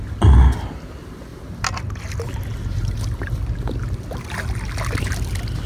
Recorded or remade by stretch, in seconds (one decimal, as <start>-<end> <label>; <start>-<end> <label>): 0.0-5.7 recorded